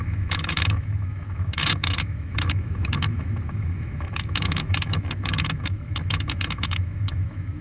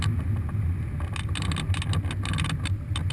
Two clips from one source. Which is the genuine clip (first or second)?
second